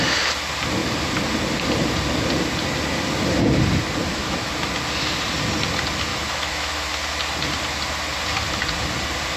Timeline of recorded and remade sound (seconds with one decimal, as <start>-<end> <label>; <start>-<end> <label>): 0.0-4.1 recorded; 4.1-4.7 remade; 4.7-6.1 recorded; 6.1-6.9 remade; 6.9-9.4 recorded

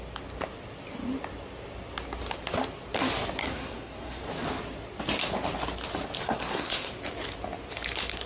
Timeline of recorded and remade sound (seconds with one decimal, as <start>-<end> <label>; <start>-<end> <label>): 0.0-3.4 recorded; 3.4-4.2 remade; 4.2-6.2 recorded; 6.2-6.9 remade; 6.9-8.3 recorded

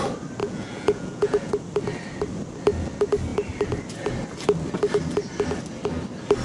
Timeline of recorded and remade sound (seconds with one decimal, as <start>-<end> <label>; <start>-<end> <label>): 0.0-0.4 recorded; 0.4-1.5 remade; 1.5-6.4 recorded

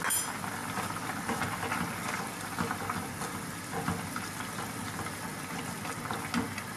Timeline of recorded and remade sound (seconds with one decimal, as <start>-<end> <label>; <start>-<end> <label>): 0.0-6.8 recorded

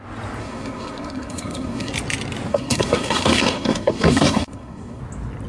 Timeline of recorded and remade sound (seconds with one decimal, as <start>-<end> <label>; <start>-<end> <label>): 0.0-0.4 recorded; 0.4-1.9 remade; 1.9-2.5 recorded; 2.5-5.0 remade; 5.0-5.5 recorded